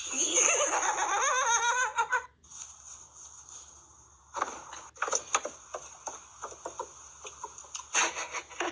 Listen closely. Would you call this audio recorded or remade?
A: recorded